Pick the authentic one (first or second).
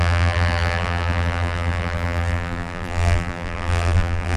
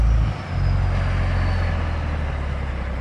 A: second